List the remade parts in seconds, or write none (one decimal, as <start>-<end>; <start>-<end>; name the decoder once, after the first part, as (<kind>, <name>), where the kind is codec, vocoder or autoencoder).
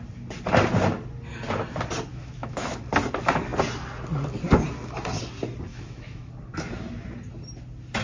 2.1-2.8 (autoencoder, DAC-VAE); 5.7-6.3